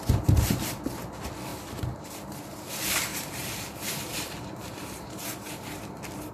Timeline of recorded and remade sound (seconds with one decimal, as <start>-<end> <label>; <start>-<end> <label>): 0.0-1.5 recorded; 1.5-2.7 remade; 2.7-3.1 recorded; 3.1-6.3 remade